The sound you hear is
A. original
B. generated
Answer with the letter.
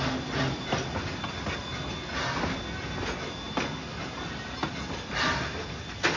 A